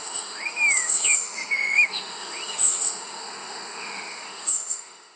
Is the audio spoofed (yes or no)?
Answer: yes